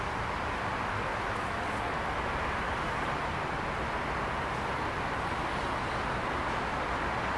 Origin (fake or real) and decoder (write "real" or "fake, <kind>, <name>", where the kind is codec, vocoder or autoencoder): real